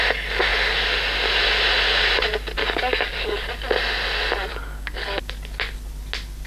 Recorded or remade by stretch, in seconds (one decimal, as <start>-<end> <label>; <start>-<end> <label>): 0.0-2.6 recorded; 2.6-3.5 remade; 3.5-4.5 recorded; 4.5-5.2 remade; 5.2-6.5 recorded